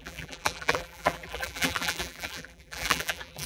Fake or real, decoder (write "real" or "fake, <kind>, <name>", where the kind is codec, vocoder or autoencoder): fake, vocoder, BigVGAN v2